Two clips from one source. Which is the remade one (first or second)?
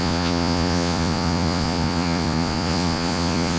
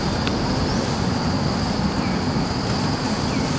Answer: first